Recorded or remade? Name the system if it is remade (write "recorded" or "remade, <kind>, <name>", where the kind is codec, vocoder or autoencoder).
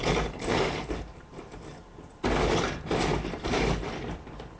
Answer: recorded